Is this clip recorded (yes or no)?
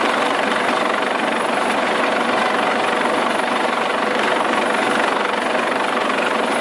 yes